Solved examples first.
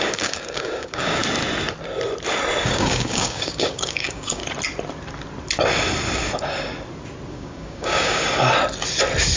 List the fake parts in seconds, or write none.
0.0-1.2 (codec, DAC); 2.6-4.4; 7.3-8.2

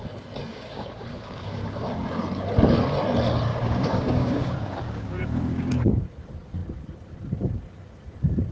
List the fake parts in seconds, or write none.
0.5-2.2 (codec, DAC); 3.5-5.9

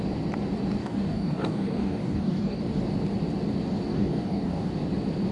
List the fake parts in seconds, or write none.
0.8-2.6 (codec, DAC); 3.9-4.7

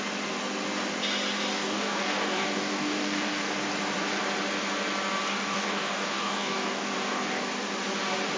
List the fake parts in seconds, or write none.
1.5-3.5 (codec, DAC); 5.3-7.4

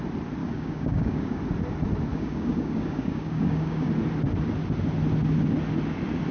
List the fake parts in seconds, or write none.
0.4-1.4 (codec, DAC); 2.1-3.9

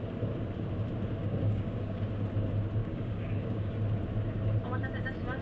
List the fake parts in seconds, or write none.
1.2-2.0 (codec, DAC); 2.8-3.7

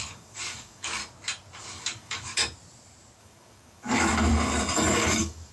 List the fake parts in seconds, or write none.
0.0-1.0 (codec, DAC); 1.6-2.4; 3.2-4.3; 4.9-5.5